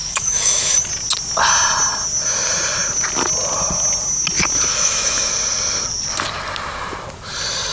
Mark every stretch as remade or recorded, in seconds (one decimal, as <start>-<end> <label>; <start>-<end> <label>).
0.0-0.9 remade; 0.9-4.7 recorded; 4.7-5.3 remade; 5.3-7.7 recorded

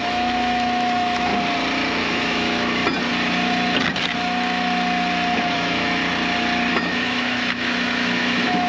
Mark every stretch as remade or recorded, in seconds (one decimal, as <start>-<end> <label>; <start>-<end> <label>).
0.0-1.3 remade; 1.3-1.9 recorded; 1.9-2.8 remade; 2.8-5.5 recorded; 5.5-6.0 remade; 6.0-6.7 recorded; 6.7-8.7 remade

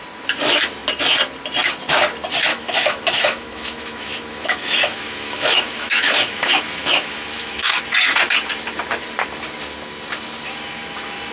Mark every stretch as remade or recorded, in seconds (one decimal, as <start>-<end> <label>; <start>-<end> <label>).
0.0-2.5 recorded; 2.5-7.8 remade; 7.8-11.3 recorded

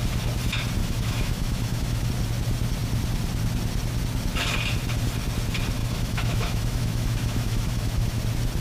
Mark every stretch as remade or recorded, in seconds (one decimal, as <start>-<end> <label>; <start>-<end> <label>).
0.0-0.8 recorded; 0.8-2.1 remade; 2.1-5.8 recorded; 5.8-8.2 remade; 8.2-8.6 recorded

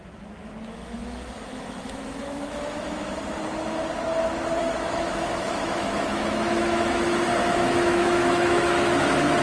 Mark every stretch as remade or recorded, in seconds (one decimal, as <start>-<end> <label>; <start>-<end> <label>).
0.0-0.4 recorded; 0.4-3.2 remade; 3.2-4.6 recorded; 4.6-7.0 remade; 7.0-7.4 recorded; 7.4-9.0 remade; 9.0-9.4 recorded